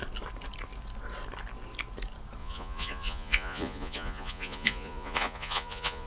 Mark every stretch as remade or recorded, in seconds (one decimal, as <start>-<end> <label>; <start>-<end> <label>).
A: 0.0-2.4 recorded; 2.4-6.1 remade